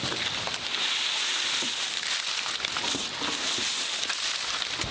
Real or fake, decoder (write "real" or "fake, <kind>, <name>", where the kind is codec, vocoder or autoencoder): real